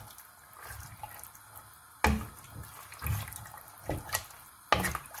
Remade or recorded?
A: recorded